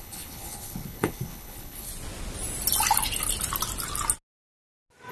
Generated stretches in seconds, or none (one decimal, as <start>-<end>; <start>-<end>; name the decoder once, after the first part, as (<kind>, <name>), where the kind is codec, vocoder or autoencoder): 0.0-1.9 (codec, HILCodec)